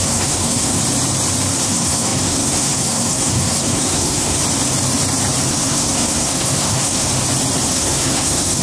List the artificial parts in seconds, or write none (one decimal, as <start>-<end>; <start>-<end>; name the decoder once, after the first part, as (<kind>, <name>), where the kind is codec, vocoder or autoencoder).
0.0-0.8 (codec, SNAC); 1.6-4.4; 5.5-7.1; 7.7-8.6